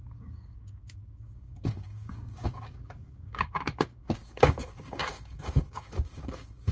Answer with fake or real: fake